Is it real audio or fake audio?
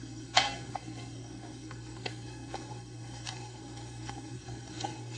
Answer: fake